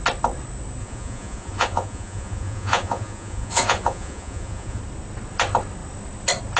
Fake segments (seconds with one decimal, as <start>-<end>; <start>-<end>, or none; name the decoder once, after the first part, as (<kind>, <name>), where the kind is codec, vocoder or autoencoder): 0.8-4.8 (vocoder, Vocos)

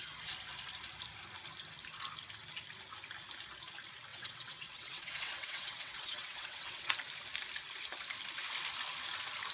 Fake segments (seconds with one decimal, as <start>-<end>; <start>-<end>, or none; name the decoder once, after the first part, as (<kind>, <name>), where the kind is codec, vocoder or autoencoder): 4.1-6.9 (vocoder, WaveNeXt)

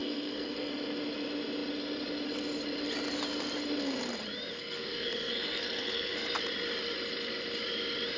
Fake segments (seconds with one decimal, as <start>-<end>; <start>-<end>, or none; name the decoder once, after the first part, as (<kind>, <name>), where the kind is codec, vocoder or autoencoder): 0.0-0.7 (codec, SNAC); 4.6-6.2